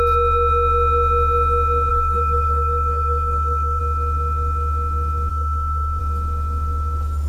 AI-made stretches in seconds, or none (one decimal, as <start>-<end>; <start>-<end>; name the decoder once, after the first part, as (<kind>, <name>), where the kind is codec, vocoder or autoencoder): 1.9-3.8 (codec, SNAC); 5.3-6.0